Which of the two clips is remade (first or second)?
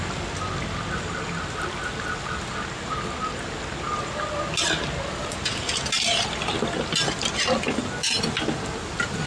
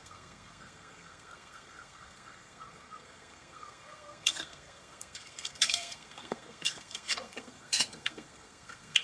second